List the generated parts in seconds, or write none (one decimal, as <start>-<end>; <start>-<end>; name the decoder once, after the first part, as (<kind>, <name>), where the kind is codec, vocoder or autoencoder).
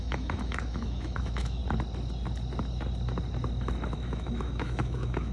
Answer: 0.0-1.6 (autoencoder, DAC-VAE); 3.9-5.3